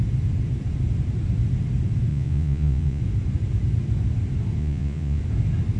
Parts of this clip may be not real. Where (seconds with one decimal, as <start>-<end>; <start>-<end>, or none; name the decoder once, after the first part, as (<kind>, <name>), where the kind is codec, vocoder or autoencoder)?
2.1-3.0 (vocoder, Vocos); 4.6-5.2